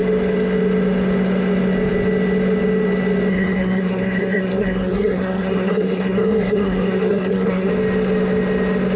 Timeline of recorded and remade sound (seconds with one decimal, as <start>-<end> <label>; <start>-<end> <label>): 0.0-3.3 recorded; 3.3-7.7 remade; 7.7-9.0 recorded